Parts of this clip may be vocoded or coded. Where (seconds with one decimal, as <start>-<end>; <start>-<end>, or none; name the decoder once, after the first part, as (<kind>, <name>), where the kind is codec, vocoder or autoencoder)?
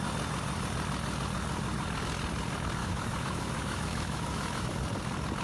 2.8-4.7 (autoencoder, DAC-VAE)